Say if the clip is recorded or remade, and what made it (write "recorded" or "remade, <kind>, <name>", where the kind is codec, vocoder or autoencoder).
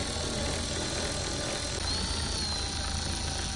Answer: recorded